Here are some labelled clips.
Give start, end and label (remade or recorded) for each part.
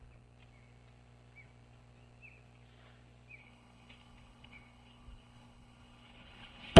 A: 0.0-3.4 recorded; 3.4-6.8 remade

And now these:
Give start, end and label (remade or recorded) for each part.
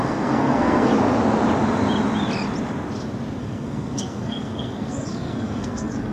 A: 0.0-0.9 remade; 0.9-3.4 recorded; 3.4-6.1 remade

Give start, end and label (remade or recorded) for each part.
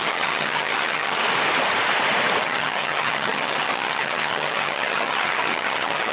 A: 0.0-1.2 remade; 1.2-2.4 recorded; 2.4-6.1 remade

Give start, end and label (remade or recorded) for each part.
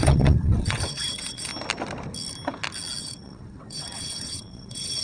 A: 0.0-1.5 remade; 1.5-3.0 recorded; 3.0-5.0 remade